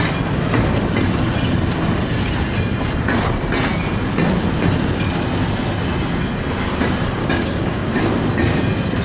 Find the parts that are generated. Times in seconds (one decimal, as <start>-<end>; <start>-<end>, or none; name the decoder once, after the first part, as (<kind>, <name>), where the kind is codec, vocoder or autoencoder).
7.2-8.0 (codec, DAC)